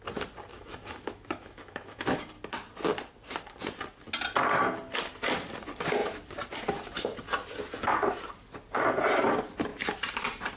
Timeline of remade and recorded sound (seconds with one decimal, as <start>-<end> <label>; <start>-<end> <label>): 0.0-0.5 recorded; 0.5-2.3 remade; 2.3-10.6 recorded

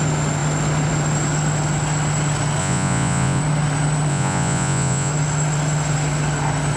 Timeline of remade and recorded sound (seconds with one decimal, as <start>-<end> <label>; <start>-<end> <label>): 0.0-2.6 recorded; 2.6-3.4 remade; 3.4-4.1 recorded; 4.1-5.1 remade; 5.1-6.8 recorded